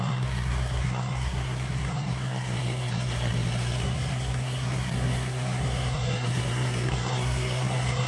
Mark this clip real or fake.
fake